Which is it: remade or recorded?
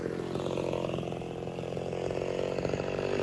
recorded